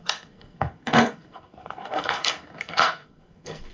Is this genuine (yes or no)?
no